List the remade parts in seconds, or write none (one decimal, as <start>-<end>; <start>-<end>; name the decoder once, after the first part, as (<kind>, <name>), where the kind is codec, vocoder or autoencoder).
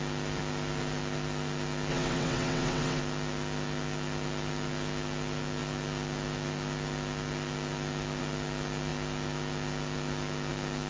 1.9-3.0 (vocoder, WaveNeXt)